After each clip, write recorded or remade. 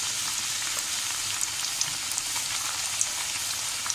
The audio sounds recorded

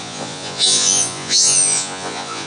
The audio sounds remade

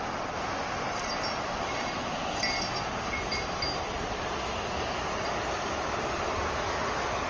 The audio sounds recorded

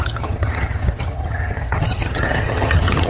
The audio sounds remade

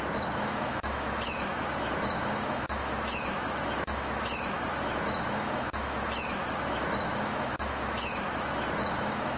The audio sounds remade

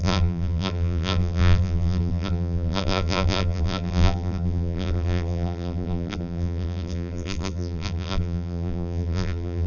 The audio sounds remade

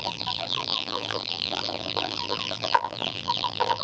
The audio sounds remade